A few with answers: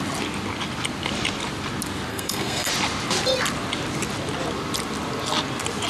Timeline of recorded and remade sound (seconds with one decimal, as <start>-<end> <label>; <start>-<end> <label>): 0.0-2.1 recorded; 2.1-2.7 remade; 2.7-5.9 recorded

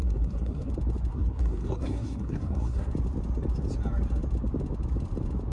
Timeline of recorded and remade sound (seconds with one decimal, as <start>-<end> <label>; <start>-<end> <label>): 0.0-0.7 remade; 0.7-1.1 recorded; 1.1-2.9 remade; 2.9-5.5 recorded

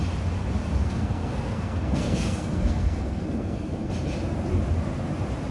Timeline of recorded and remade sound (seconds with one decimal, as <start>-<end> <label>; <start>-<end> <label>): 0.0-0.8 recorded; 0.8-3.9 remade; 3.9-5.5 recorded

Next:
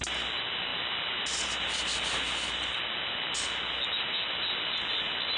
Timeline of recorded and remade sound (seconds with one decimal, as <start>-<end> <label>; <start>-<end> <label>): 0.0-5.4 recorded

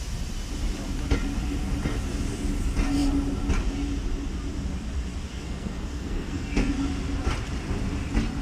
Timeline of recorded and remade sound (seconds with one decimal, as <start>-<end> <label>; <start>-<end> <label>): 0.0-5.3 recorded; 5.3-6.7 remade; 6.7-8.4 recorded

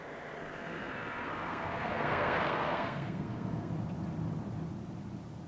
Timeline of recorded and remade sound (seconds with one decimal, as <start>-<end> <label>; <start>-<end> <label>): 0.0-0.4 recorded; 0.4-3.7 remade; 3.7-5.5 recorded